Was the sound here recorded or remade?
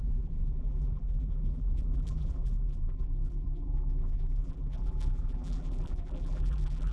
remade